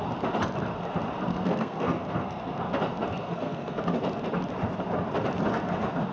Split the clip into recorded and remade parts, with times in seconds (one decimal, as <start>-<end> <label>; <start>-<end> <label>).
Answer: 0.0-1.3 recorded; 1.3-2.8 remade; 2.8-3.2 recorded; 3.2-3.8 remade; 3.8-6.1 recorded